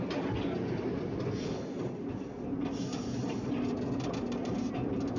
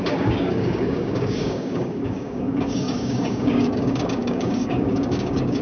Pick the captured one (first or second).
first